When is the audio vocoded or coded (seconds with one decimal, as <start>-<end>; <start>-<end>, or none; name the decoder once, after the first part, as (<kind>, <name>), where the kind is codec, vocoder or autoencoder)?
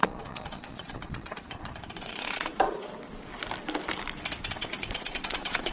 0.0-2.9 (vocoder, Vocos); 4.5-5.7